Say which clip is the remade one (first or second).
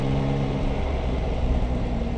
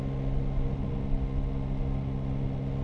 first